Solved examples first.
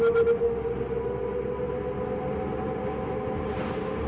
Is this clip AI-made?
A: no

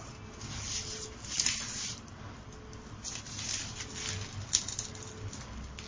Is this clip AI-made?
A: no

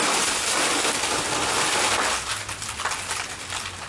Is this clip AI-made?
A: no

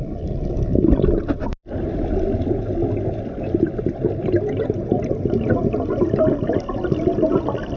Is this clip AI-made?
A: no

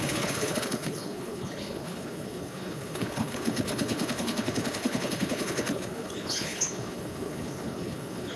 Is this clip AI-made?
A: yes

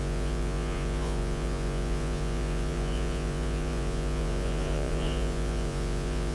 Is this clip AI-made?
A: yes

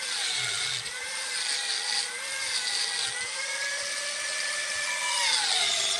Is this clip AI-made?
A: no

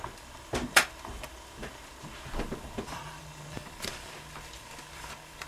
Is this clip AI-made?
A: yes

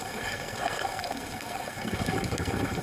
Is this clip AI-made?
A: yes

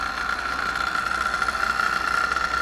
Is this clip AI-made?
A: no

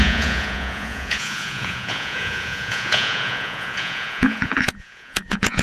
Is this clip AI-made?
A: yes